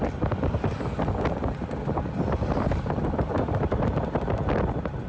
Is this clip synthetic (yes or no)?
no